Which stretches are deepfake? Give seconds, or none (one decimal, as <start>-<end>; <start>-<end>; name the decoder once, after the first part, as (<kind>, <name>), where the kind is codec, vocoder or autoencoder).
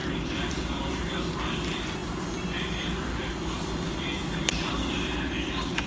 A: none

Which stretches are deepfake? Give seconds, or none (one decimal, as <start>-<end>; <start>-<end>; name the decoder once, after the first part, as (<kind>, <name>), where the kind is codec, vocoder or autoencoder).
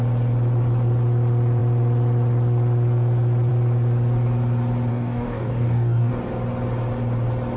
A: 4.9-6.1 (codec, DAC)